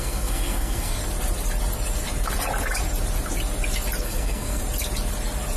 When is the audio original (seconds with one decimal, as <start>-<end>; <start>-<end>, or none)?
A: 1.0-4.0; 4.6-5.6